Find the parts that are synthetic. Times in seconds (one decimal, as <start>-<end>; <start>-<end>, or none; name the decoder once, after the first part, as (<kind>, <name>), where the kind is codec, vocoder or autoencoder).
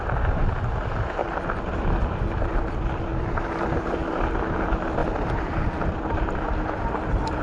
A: 1.2-2.5 (vocoder, BigVGAN v2); 3.1-3.8; 5.0-6.2